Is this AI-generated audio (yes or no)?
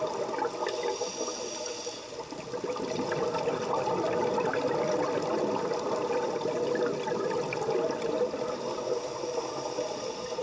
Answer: no